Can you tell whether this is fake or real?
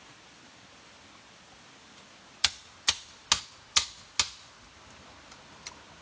real